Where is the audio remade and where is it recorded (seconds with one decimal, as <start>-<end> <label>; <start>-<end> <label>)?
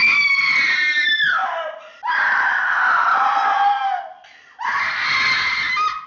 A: 0.0-1.4 recorded; 1.4-2.7 remade; 2.7-6.1 recorded